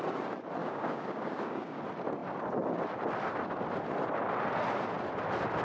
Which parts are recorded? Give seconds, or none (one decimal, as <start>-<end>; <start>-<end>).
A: 0.0-0.6; 1.8-5.6